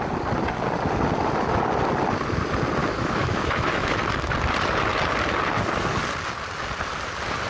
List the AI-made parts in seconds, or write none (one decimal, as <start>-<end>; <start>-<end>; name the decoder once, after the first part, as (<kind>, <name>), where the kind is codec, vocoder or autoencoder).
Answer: 2.8-4.0 (autoencoder, DAC-VAE)